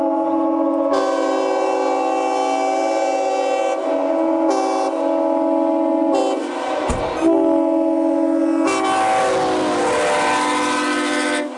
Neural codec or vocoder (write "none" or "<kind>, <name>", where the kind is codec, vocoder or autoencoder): none